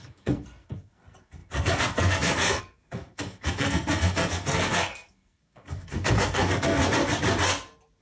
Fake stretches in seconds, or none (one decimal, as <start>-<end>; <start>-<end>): 0.0-6.8